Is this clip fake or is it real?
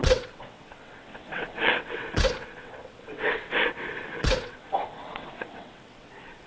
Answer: fake